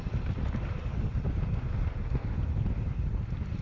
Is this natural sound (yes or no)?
yes